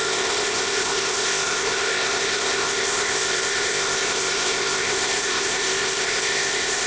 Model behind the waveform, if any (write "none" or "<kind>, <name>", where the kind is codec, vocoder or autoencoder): codec, ZipCodec